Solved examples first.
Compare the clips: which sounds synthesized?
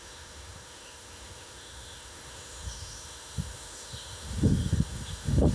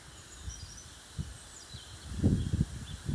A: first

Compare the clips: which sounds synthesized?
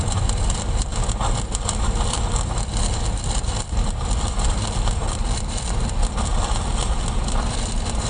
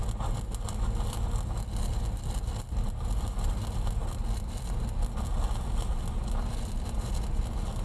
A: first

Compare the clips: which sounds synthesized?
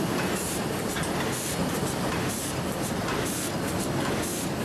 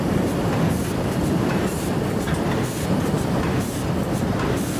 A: second